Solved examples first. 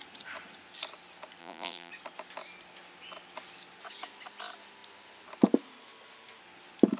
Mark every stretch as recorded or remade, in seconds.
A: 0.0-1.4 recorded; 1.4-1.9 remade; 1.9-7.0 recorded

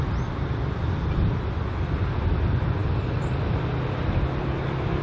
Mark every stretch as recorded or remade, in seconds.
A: 0.0-5.0 recorded

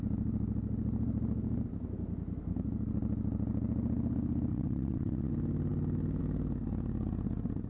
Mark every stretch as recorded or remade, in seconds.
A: 0.0-4.5 recorded; 4.5-5.3 remade; 5.3-7.7 recorded

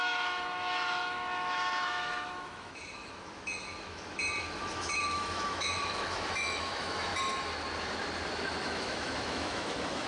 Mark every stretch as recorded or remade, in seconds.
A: 0.0-7.1 remade; 7.1-8.6 recorded; 8.6-10.1 remade

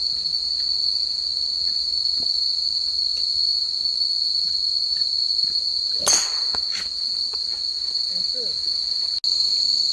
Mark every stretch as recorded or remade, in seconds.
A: 0.0-9.9 recorded

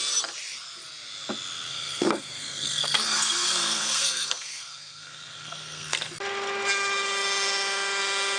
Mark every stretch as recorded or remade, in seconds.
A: 0.0-1.7 recorded; 1.7-6.1 remade; 6.1-8.4 recorded